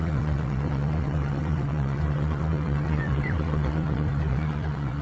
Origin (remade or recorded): remade